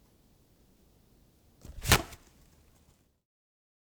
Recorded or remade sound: recorded